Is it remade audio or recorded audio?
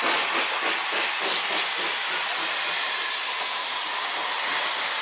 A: recorded